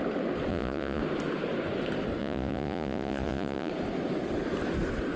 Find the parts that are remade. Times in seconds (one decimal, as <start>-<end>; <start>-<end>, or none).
0.5-1.0; 2.2-3.7